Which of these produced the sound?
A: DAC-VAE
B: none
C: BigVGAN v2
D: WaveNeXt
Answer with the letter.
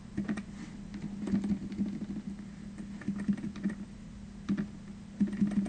B